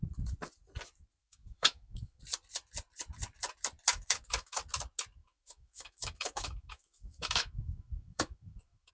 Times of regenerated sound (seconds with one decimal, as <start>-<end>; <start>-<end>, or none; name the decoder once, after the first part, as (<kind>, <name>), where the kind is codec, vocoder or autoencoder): 1.2-2.2 (autoencoder, DAC-VAE); 3.9-4.6; 5.2-8.9

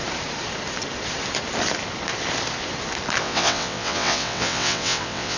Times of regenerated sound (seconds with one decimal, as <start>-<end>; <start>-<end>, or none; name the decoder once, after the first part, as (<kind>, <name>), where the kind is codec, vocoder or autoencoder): 3.2-5.4 (vocoder, WaveNeXt)

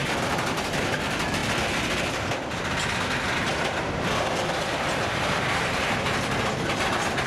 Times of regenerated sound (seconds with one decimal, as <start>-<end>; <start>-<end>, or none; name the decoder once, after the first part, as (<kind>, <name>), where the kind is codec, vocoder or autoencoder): none

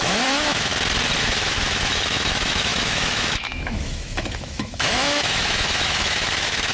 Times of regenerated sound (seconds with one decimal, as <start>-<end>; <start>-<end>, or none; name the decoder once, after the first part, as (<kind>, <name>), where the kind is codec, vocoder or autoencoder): 0.0-0.7 (autoencoder, DAC-VAE); 1.2-6.7